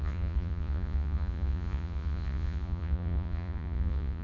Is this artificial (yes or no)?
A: yes